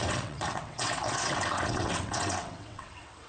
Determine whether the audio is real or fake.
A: fake